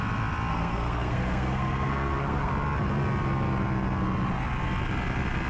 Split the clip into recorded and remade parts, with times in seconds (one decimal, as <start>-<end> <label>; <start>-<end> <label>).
0.0-0.5 recorded; 0.5-2.5 remade; 2.5-5.5 recorded